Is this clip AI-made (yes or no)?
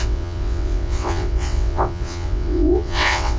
yes